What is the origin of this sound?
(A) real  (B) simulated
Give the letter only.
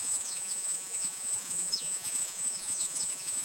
B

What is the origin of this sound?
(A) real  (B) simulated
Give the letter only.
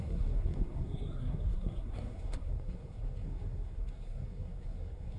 B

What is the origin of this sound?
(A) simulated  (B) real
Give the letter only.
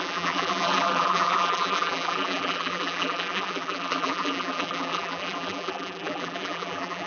A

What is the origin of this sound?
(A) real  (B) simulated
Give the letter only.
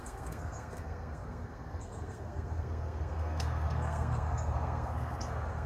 B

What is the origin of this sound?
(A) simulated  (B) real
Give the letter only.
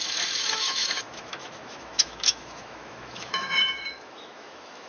A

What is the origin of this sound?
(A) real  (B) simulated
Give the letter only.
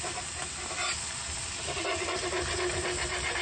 A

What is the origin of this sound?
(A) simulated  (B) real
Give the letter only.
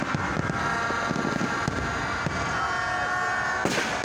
B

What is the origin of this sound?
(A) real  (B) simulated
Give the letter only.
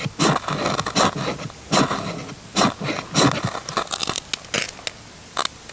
A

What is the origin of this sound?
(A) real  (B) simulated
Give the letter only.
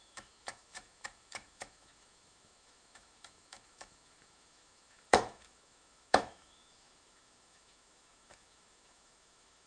B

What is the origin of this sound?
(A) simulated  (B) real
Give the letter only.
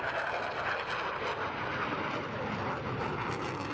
B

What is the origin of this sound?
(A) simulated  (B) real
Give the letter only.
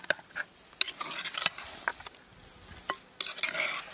B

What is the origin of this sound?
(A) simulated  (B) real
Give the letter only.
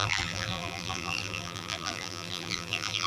A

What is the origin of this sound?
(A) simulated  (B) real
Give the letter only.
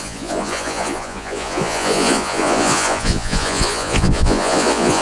A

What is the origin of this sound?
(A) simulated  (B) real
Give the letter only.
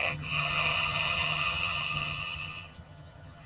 A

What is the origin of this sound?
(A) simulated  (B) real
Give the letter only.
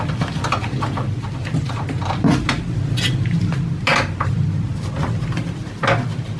B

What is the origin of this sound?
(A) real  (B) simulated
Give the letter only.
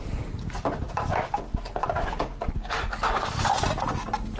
A